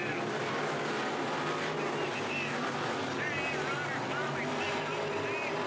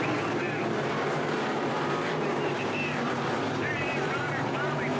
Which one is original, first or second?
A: first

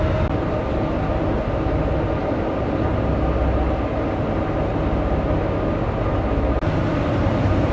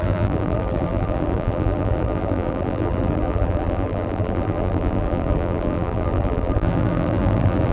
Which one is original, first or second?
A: first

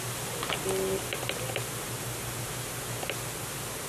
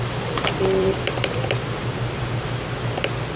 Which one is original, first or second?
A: first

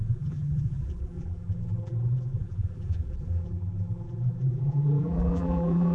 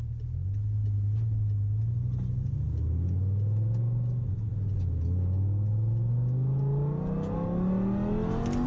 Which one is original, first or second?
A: second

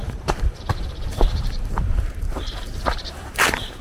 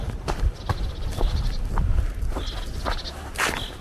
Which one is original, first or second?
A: second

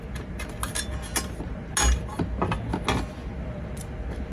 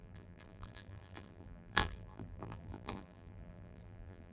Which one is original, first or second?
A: first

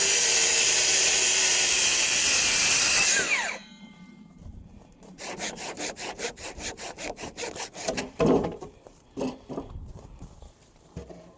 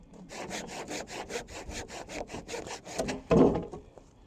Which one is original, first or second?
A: second